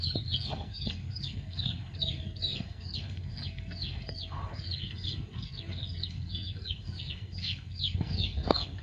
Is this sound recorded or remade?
remade